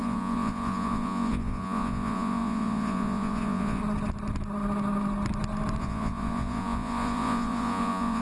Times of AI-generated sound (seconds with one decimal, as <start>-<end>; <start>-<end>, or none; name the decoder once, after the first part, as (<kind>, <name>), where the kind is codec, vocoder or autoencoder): 0.0-3.8 (vocoder, Vocos); 5.8-8.2